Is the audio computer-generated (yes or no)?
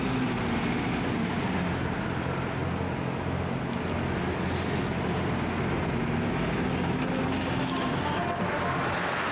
no